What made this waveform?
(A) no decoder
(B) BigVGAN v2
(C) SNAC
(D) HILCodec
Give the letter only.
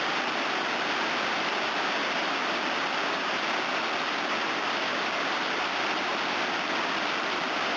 A